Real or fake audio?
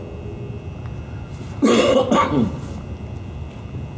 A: real